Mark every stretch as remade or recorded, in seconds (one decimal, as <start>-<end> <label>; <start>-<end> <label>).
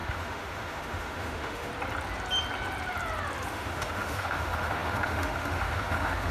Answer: 0.0-1.7 remade; 1.7-3.5 recorded; 3.5-6.3 remade